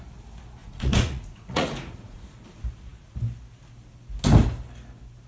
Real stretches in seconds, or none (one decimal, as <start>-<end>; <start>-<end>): 0.0-0.6; 2.4-5.3

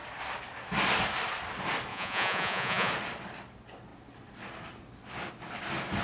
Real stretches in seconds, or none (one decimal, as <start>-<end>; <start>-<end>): 0.0-1.9; 2.9-6.0

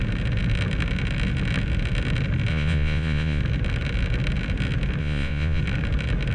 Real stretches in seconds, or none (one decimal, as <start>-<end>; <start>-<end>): 0.0-2.5; 3.4-5.0; 5.6-6.3

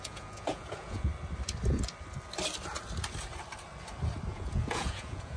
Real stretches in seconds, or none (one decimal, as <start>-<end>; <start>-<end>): 1.1-4.3

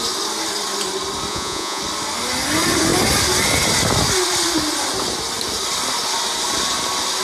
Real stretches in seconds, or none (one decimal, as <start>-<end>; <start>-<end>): 0.0-1.3; 1.8-7.2